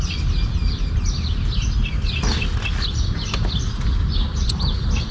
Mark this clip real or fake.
real